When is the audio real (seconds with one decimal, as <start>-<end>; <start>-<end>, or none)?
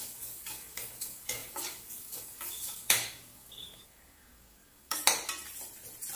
5.0-6.2